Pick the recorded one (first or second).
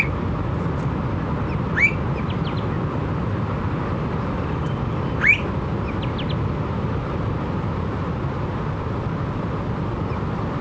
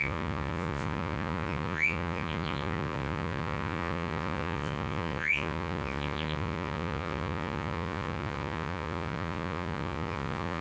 first